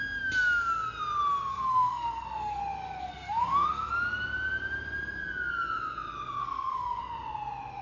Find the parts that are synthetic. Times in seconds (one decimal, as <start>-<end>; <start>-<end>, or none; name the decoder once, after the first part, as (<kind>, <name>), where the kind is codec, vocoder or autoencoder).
1.5-2.6 (codec, SNAC); 3.0-3.9; 6.4-7.0